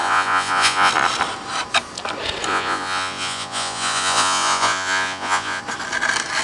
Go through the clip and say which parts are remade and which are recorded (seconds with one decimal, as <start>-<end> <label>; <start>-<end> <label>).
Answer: 0.0-0.9 remade; 0.9-2.5 recorded; 2.5-5.6 remade; 5.6-6.4 recorded